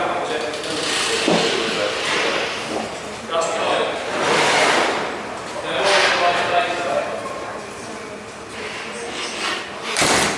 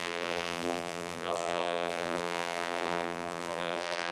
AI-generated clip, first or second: second